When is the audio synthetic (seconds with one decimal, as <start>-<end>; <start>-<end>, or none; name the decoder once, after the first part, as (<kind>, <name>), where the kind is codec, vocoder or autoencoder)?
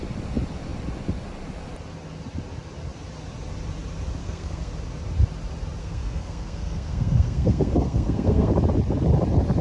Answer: 4.2-4.7 (codec, SNAC); 5.8-8.5